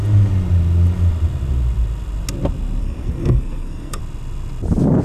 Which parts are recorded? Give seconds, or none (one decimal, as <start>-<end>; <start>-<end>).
0.0-2.8; 4.0-5.0

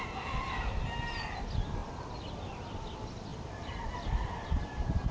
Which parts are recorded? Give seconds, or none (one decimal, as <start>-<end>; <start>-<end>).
0.0-5.1

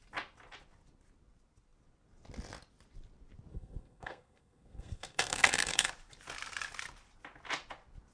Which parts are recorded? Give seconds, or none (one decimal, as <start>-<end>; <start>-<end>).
0.0-3.5; 5.9-8.1

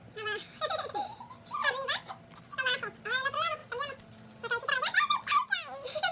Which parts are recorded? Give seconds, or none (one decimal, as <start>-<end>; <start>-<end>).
0.0-1.6; 2.1-6.1

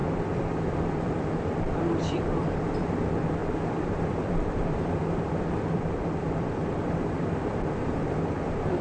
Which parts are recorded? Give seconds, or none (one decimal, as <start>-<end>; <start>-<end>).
none

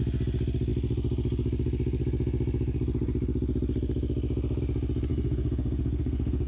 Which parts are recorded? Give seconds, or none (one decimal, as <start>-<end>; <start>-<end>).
0.0-5.1

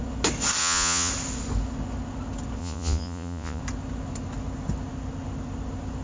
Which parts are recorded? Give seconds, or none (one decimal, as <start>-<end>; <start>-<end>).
0.0-0.6; 1.1-2.6; 3.6-6.0

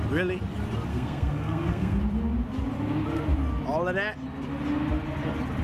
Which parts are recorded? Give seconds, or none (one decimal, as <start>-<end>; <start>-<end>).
0.0-0.9; 2.0-5.6